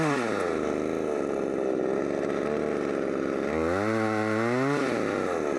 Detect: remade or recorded recorded